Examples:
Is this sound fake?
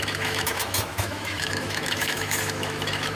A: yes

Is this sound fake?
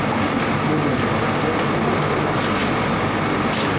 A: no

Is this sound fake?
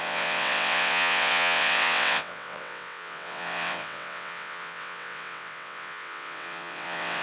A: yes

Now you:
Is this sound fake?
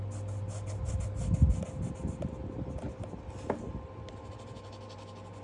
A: no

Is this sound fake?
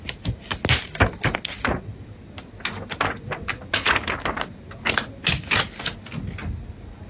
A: no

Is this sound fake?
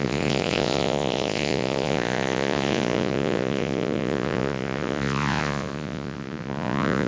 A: yes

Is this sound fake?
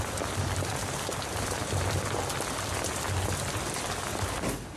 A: no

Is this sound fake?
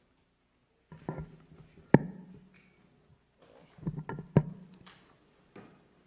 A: no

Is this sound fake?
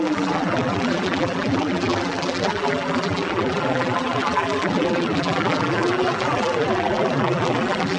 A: yes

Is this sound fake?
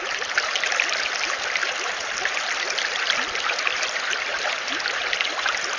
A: no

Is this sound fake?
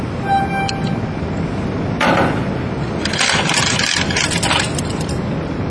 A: no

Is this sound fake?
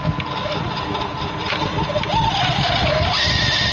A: no